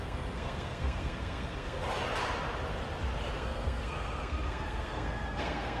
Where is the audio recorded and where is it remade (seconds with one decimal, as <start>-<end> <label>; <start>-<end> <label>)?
0.0-1.8 remade; 1.8-3.3 recorded; 3.3-5.8 remade